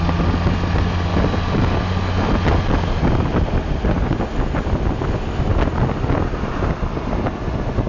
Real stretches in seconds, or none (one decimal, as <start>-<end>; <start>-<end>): 0.0-7.9